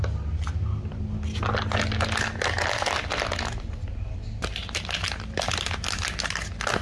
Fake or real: real